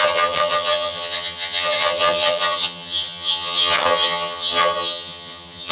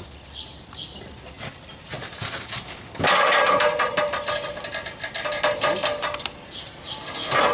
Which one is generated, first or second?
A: first